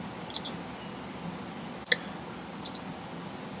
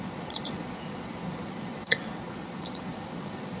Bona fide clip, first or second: first